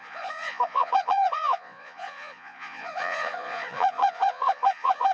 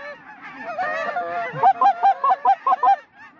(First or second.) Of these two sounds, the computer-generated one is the first